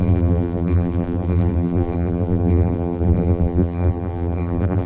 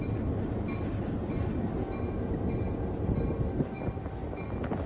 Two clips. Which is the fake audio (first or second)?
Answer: first